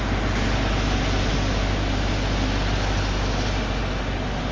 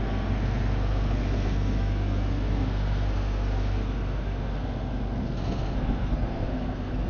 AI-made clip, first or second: second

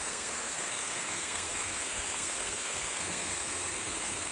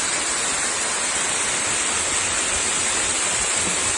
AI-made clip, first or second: first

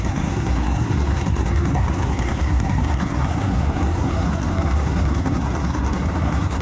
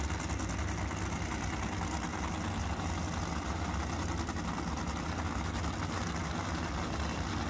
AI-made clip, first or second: first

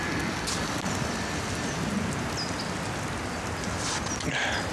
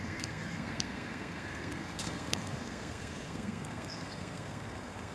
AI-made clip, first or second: second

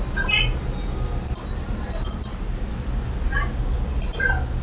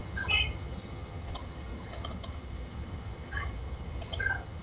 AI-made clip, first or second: second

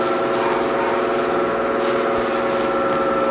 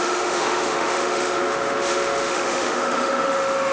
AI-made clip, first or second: second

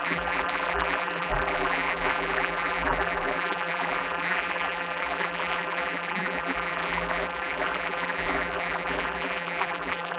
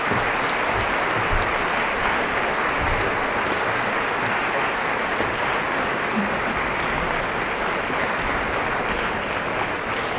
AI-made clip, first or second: first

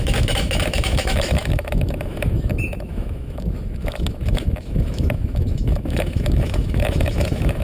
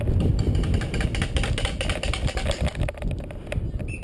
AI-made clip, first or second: first